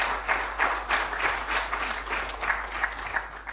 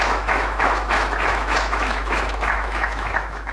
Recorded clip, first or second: first